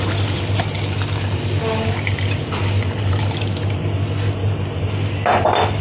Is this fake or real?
real